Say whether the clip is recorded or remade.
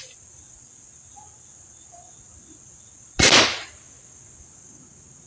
recorded